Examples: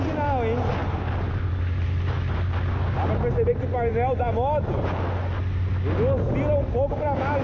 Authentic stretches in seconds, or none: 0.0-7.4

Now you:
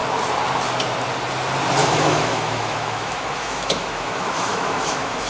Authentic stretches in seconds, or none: 0.0-1.8

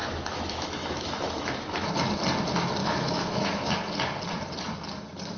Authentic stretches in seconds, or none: 1.9-2.8; 3.7-5.4